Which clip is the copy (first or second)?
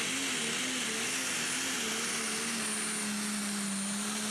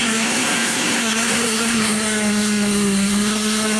second